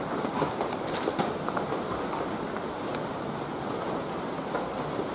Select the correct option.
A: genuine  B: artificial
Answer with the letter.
A